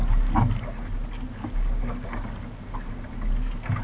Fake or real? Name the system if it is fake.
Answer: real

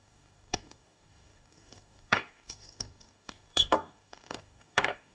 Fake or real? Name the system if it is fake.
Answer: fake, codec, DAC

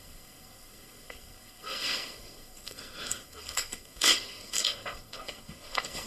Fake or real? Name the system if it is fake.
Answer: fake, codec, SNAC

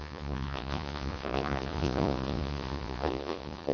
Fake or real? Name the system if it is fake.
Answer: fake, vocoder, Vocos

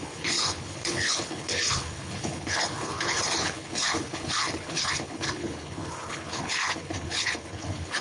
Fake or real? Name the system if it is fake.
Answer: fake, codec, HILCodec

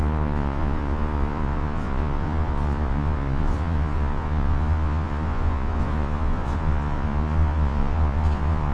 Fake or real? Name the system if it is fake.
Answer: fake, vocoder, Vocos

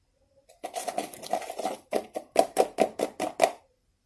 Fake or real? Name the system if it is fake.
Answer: real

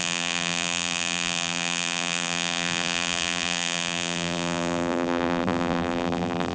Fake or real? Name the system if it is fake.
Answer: fake, vocoder, BigVGAN v2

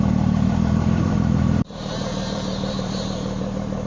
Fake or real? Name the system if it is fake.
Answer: fake, vocoder, BigVGAN v2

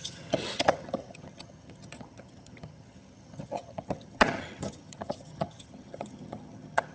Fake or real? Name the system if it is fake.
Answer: fake, vocoder, HiFi-GAN